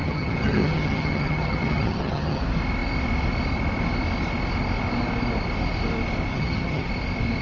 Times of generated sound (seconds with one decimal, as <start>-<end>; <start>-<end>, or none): 0.0-2.4; 6.3-6.9